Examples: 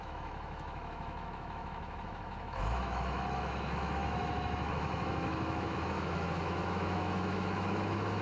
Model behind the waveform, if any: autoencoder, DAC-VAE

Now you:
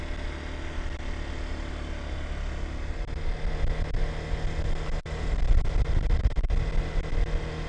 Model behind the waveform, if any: none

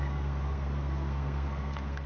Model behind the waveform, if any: codec, SNAC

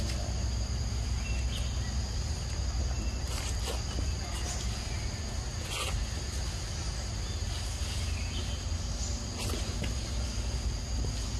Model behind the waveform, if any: none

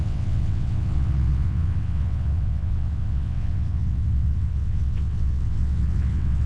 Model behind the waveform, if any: vocoder, WaveNeXt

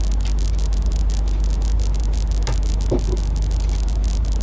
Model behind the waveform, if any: none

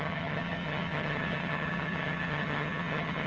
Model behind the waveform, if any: vocoder, HiFi-GAN